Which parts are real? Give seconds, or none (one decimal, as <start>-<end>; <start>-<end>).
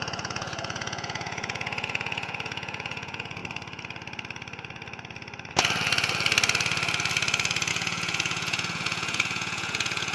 3.4-7.7